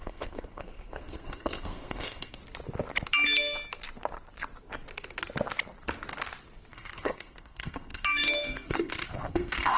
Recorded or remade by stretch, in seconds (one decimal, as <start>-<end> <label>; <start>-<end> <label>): 0.0-2.4 remade; 2.4-6.7 recorded; 6.7-9.8 remade